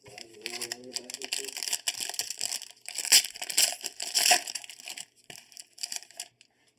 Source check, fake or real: real